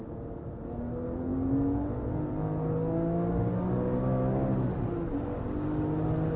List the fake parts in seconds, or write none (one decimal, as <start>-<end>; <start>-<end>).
none